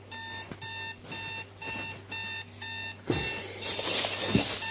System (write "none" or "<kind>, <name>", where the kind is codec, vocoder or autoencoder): none